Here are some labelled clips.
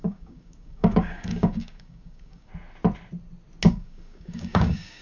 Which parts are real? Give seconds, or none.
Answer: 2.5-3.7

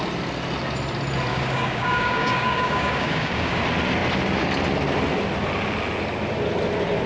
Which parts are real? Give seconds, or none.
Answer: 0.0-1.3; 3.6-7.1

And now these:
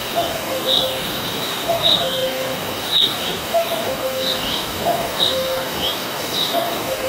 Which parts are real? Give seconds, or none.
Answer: none

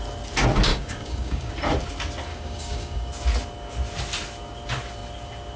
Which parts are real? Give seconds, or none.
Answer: 0.0-0.7; 1.5-2.3; 3.1-5.6

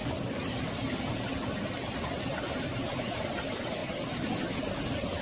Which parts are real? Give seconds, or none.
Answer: 0.0-5.2

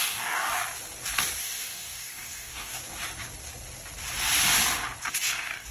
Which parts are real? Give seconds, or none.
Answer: 0.5-1.4; 2.8-5.1

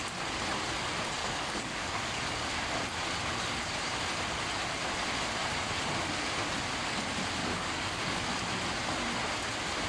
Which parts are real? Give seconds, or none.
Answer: 0.0-1.2; 2.2-7.4; 8.2-9.9

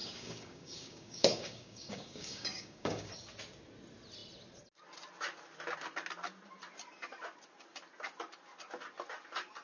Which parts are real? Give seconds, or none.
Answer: 3.1-9.6